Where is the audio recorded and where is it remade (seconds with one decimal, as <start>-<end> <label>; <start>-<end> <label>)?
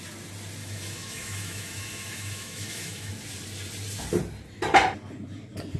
0.0-0.6 recorded; 0.6-3.1 remade; 3.1-5.8 recorded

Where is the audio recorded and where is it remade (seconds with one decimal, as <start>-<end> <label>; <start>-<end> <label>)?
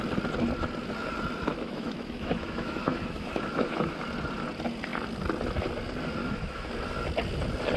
0.0-1.5 recorded; 1.5-4.0 remade; 4.0-6.2 recorded; 6.2-6.7 remade; 6.7-7.8 recorded